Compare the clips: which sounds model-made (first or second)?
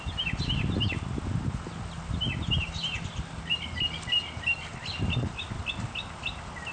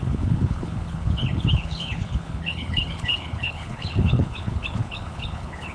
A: second